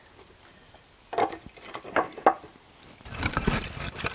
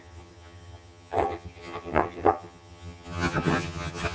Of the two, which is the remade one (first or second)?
second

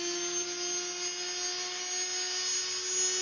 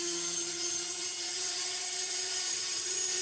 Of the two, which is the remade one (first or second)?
second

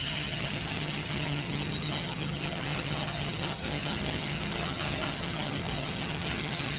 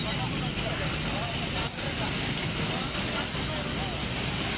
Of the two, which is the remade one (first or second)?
first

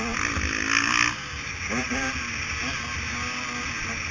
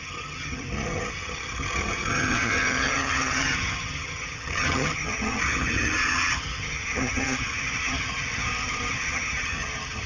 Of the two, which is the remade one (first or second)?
second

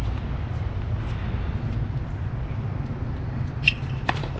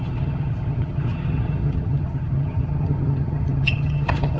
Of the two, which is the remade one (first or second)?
second